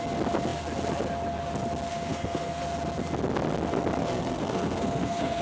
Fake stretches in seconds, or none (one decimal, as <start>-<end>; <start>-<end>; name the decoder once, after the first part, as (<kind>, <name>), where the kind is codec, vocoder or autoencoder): 2.1-2.6 (codec, SNAC); 4.0-5.4